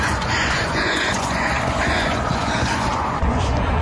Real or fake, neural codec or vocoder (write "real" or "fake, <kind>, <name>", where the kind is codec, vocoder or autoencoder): fake, vocoder, Vocos